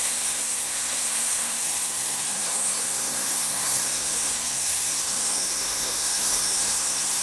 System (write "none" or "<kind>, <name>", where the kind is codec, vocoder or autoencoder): codec, SNAC